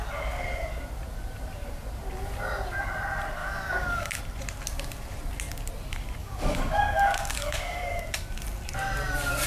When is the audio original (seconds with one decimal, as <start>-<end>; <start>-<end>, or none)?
0.0-3.4; 4.2-6.2; 8.0-9.5

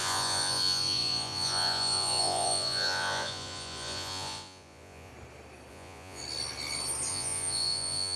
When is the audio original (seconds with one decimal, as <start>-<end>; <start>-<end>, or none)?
5.1-5.7; 6.2-7.1

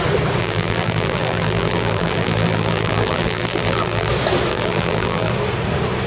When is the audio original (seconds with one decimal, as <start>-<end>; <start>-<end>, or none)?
0.0-0.4; 4.1-4.5; 5.3-6.1

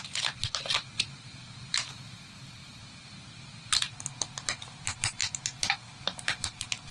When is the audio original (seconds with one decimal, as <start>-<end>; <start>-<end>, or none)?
0.0-6.9

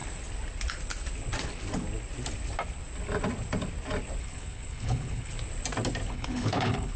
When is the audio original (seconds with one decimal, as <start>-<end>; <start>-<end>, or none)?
0.0-4.2; 5.3-6.1

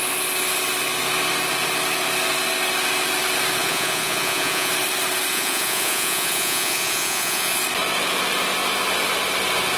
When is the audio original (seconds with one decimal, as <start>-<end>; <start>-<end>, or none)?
0.0-3.6; 4.7-5.3; 7.6-9.8

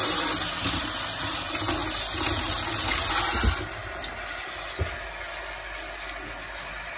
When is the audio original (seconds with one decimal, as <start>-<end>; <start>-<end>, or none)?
0.0-7.0